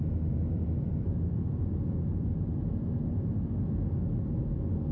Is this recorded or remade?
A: recorded